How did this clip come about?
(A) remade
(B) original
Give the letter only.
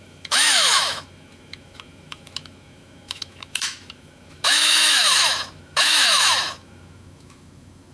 A